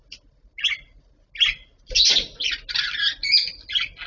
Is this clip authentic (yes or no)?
yes